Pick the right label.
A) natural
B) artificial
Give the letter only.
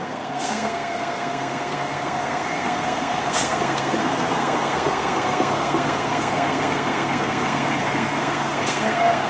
B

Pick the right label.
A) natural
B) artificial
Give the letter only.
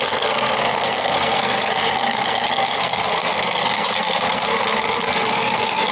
B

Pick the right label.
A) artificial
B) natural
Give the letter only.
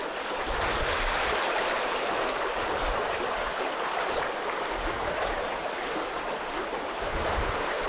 B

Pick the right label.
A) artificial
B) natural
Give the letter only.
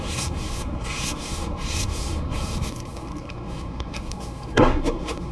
A